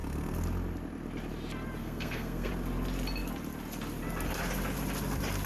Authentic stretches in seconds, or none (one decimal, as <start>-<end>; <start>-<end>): 0.0-1.8; 2.5-5.5